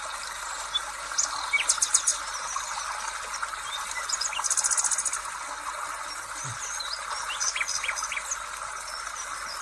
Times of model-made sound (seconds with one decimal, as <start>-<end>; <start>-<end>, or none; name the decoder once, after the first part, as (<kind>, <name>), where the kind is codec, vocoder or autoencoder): none